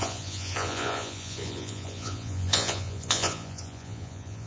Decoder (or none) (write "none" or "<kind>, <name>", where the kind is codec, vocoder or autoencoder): vocoder, Vocos